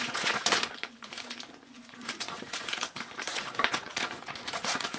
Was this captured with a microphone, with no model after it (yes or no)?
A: no